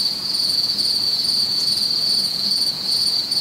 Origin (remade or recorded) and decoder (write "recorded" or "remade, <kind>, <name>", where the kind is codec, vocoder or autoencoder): remade, vocoder, Vocos